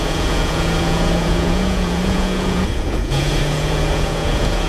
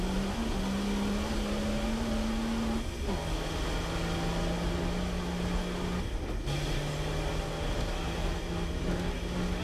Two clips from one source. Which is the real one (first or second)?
second